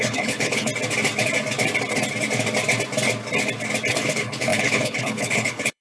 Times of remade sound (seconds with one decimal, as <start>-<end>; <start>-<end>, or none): 0.0-0.7; 3.9-5.8

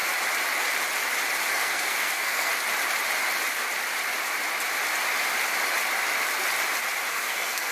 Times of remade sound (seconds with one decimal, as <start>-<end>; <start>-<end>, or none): 1.5-2.5; 7.1-7.7